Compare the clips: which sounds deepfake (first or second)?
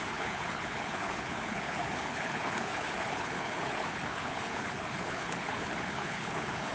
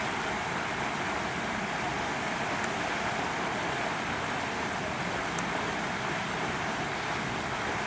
first